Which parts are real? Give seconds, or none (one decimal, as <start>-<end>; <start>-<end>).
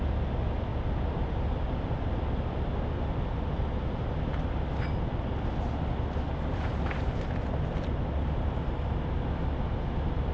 0.0-10.3